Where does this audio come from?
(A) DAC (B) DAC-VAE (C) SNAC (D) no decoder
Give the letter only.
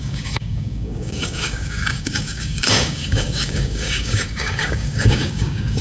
A